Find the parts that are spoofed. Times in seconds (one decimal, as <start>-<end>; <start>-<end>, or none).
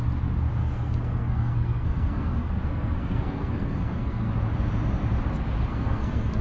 0.6-4.3; 5.7-6.4